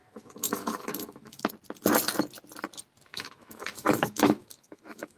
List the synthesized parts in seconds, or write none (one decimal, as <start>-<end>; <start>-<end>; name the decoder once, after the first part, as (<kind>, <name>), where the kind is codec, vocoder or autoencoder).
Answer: 0.0-1.5 (autoencoder, DAC-VAE); 3.1-5.2